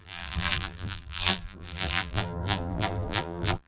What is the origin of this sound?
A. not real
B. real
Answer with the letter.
A